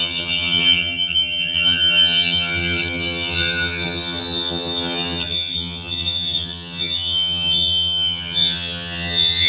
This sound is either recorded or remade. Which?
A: remade